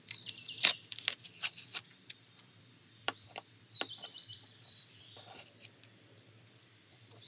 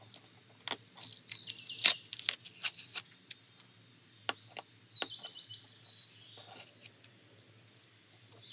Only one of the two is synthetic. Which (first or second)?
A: first